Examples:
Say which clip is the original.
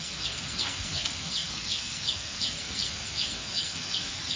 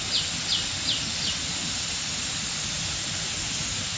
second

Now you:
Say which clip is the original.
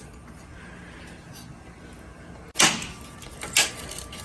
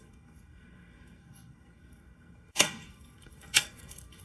first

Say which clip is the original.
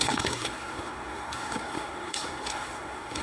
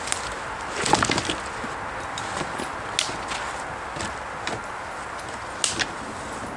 second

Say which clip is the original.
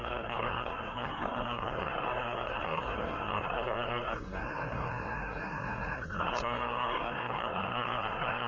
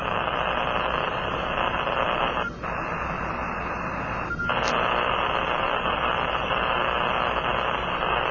second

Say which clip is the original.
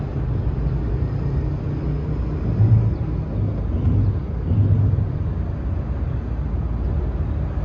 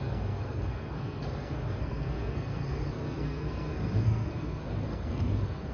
first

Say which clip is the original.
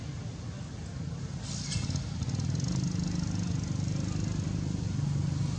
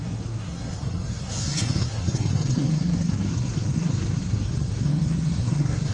first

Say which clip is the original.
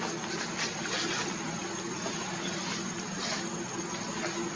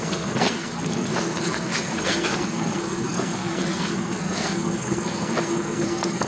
first